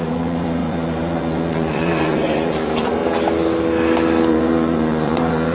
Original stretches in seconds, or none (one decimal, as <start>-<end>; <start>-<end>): 3.0-4.3